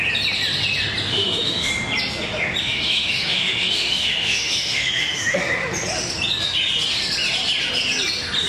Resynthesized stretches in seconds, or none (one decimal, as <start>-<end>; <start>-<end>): 1.1-1.7; 2.6-5.4